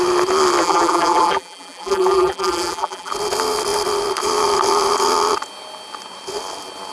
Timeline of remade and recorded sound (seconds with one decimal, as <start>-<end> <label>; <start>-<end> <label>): 0.0-0.6 recorded; 0.6-3.1 remade; 3.1-6.9 recorded